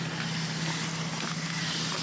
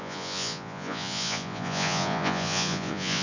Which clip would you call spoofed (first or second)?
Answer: second